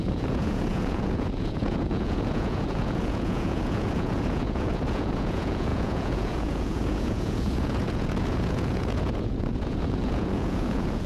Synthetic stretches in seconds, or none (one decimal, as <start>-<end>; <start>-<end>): 0.0-11.1